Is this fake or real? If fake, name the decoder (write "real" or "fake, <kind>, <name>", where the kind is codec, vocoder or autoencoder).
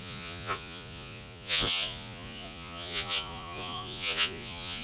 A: fake, vocoder, Vocos